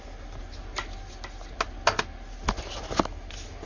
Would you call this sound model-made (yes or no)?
no